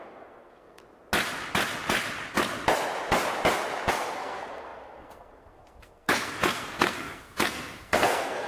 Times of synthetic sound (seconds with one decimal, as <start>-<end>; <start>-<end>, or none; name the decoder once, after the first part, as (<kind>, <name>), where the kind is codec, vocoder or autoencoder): 0.0-0.8 (codec, SNAC); 3.9-8.5